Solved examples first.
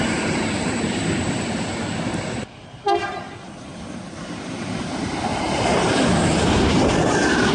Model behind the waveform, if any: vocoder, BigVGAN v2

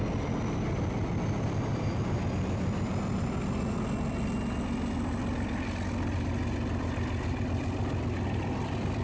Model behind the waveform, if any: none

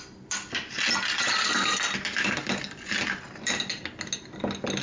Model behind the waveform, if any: none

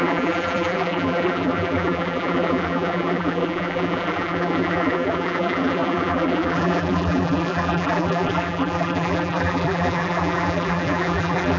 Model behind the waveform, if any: vocoder, BigVGAN v2